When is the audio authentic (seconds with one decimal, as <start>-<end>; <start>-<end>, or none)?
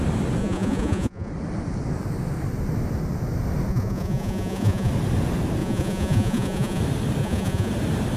0.0-0.4; 1.3-3.7; 4.9-5.6; 6.8-7.2; 7.7-8.2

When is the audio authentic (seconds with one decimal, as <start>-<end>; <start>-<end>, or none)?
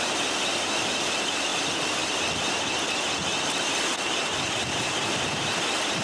0.0-6.0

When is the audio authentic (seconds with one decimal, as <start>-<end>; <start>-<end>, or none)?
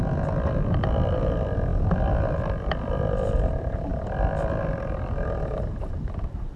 0.0-6.6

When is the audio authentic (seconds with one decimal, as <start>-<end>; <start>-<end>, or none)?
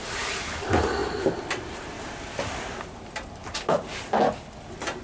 0.0-5.0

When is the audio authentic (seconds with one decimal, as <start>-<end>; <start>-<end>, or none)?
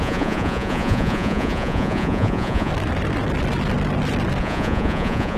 2.7-4.4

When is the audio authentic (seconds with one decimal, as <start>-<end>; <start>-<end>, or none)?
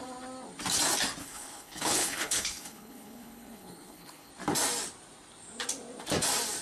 0.0-1.2; 4.3-6.6